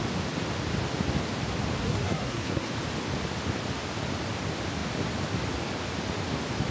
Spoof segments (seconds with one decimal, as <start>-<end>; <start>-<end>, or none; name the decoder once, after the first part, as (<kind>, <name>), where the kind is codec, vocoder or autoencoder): 1.8-2.7 (codec, SNAC)